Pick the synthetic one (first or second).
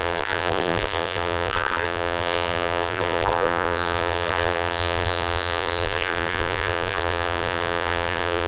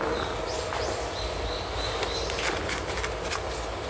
first